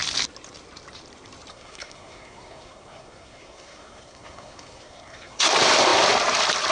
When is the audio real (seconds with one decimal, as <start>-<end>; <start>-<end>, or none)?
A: 0.0-1.5; 5.5-6.7